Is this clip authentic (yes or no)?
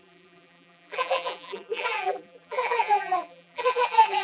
no